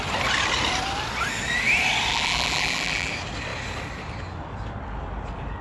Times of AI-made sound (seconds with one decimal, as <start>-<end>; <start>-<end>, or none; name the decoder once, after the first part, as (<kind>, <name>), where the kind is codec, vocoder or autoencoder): 2.1-3.1 (vocoder, BigVGAN v2)